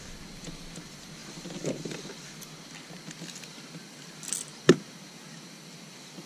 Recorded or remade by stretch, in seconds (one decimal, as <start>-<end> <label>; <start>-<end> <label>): 0.0-6.3 recorded

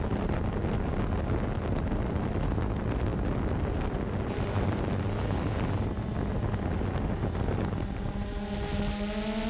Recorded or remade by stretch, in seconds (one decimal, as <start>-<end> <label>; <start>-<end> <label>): 0.0-9.5 recorded

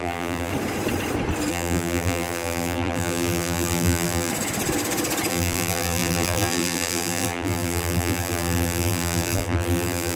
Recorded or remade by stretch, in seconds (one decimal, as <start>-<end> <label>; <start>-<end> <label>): 0.0-0.5 remade; 0.5-1.5 recorded; 1.5-4.3 remade; 4.3-5.3 recorded; 5.3-10.2 remade